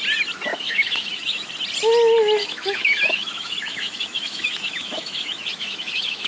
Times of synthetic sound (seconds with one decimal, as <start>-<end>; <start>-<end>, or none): 0.5-1.5; 2.4-6.3